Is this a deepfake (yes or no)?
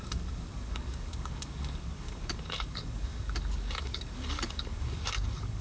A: yes